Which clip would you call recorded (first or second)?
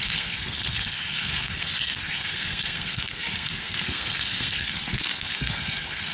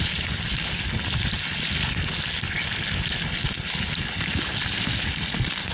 second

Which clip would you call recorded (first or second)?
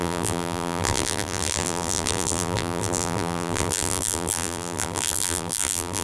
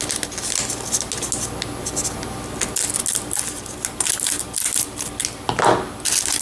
second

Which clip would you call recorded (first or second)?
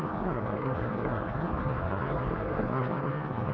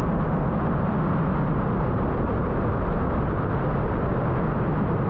second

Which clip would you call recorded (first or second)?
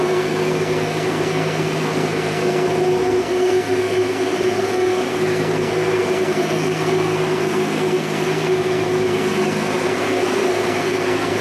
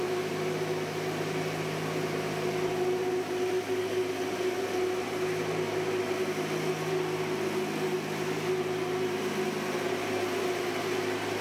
second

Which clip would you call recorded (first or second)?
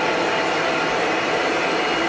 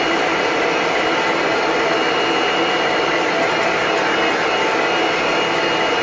second